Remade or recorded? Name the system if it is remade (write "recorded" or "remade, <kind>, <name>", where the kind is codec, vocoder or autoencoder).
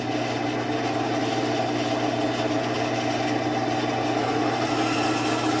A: recorded